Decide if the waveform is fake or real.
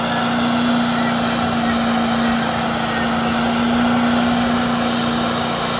real